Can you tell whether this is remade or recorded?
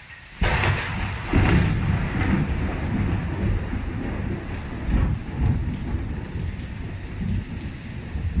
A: recorded